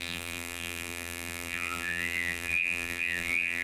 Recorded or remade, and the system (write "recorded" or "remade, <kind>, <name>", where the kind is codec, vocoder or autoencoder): remade, vocoder, BigVGAN v2